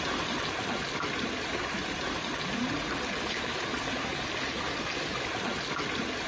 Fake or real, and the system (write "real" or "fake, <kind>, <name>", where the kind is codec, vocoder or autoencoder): real